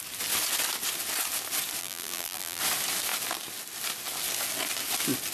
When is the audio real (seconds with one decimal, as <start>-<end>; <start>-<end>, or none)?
0.0-1.8; 2.6-5.3